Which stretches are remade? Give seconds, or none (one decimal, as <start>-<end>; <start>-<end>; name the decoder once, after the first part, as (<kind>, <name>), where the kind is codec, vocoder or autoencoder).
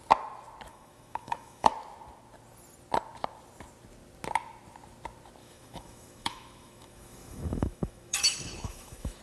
0.7-1.7 (autoencoder, DAC-VAE); 5.4-9.2